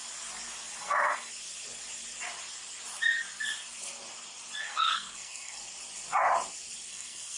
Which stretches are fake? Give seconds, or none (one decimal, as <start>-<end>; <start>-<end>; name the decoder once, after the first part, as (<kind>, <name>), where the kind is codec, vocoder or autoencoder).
0.8-1.3 (codec, SNAC); 4.6-5.6; 6.9-7.4